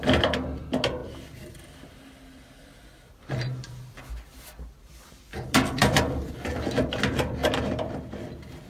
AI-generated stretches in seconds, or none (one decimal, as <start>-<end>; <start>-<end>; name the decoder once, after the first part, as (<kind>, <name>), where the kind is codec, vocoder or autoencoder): 1.0-4.0 (vocoder, BigVGAN v2); 5.3-6.3; 7.4-8.0